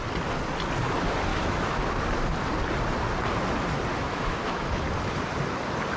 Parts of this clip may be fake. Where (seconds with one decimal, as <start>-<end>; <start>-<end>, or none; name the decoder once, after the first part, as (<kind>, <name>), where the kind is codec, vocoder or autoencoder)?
1.3-1.8 (autoencoder, DAC-VAE); 3.9-4.8